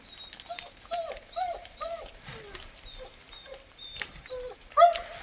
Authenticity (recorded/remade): recorded